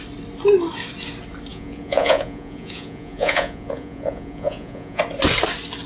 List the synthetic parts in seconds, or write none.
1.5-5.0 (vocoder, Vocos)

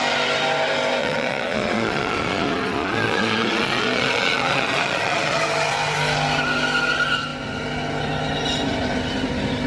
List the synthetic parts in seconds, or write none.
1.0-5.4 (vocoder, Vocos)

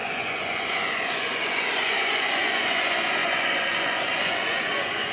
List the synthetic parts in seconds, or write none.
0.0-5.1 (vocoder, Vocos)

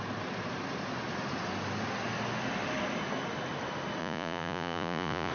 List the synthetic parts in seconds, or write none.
4.0-5.3 (vocoder, Vocos)

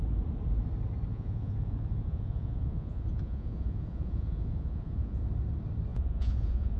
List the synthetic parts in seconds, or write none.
1.1-5.2 (vocoder, Vocos); 5.9-6.8

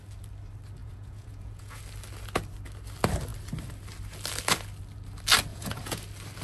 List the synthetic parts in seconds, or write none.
0.8-1.8 (vocoder, Vocos); 5.5-6.0